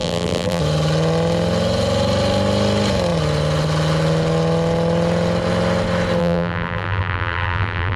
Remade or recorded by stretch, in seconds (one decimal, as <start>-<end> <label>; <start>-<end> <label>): 0.0-0.6 remade; 0.6-6.2 recorded; 6.2-8.0 remade